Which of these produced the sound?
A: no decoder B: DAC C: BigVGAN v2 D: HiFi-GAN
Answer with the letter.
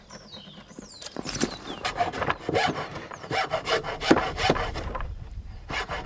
C